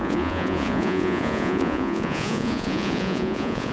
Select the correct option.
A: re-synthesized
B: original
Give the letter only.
A